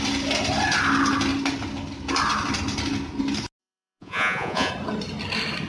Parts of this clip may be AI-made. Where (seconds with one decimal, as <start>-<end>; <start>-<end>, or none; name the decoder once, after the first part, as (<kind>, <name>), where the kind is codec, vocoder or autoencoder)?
3.6-4.7 (vocoder, Vocos)